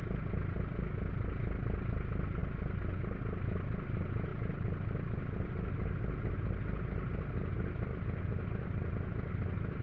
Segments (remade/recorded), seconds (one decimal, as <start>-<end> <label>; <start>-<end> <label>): 0.0-9.8 recorded